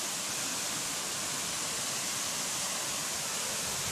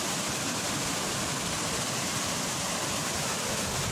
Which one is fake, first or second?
second